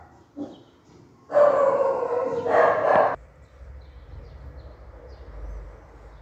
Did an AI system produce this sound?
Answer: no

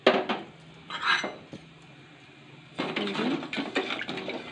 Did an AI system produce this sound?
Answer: no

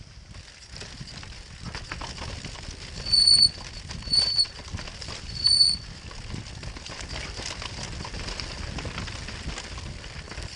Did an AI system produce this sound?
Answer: no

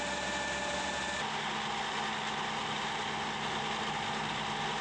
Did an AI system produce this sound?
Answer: no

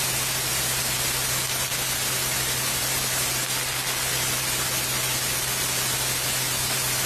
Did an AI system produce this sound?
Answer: no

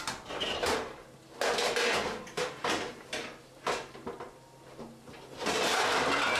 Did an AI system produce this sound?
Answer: no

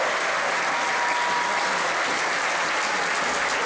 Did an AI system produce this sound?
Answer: no